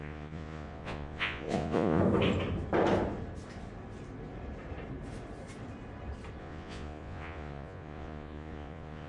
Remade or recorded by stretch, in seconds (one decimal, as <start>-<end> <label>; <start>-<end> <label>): 0.0-2.0 remade; 2.0-6.4 recorded; 6.4-9.1 remade